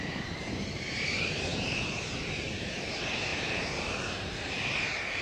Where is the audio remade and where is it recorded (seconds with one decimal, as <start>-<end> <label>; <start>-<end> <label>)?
0.0-5.2 remade